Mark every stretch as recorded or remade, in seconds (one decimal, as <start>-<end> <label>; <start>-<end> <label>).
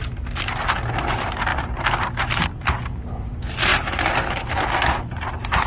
0.0-5.7 recorded